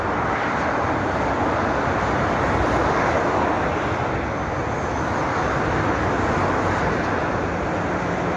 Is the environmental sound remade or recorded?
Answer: recorded